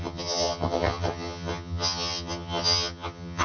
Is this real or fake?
fake